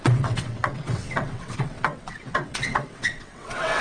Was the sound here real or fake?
fake